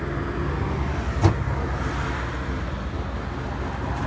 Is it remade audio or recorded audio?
recorded